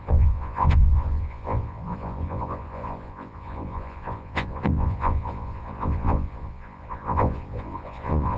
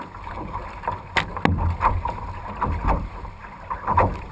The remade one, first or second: first